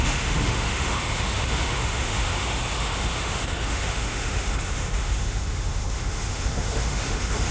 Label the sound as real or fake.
fake